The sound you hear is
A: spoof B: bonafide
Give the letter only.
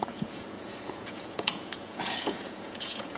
A